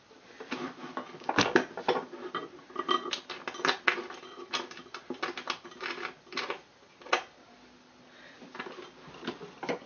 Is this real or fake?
real